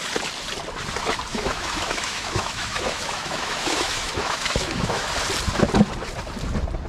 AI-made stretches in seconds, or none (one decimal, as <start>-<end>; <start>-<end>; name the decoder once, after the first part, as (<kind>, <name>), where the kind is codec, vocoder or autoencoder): 1.3-5.1 (autoencoder, DAC-VAE)

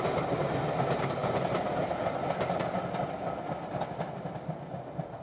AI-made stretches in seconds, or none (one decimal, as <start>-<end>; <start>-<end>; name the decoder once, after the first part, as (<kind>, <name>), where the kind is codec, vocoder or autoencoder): none

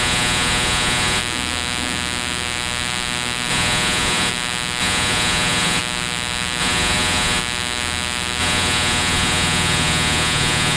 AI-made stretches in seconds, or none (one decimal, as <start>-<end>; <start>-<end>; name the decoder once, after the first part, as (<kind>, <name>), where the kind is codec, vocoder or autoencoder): 0.0-1.2 (vocoder, Vocos); 3.5-4.3; 4.8-5.8; 6.6-7.4; 8.4-10.8

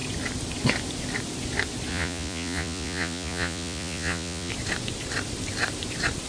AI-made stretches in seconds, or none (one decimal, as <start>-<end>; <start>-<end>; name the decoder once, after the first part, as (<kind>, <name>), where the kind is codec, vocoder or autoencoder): 1.9-4.5 (vocoder, Vocos)